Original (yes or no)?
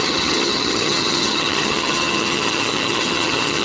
no